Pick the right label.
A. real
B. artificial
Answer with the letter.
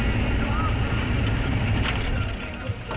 A